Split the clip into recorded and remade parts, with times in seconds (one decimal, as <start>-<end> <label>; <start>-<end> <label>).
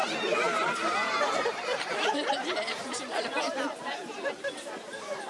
0.0-1.9 recorded; 1.9-5.3 remade